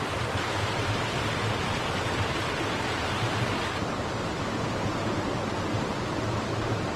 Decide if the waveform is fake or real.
real